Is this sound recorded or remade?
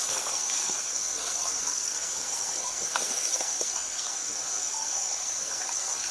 remade